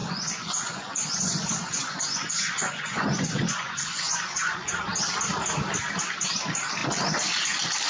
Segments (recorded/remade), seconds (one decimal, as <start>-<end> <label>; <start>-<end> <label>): 0.0-4.7 remade; 4.7-7.9 recorded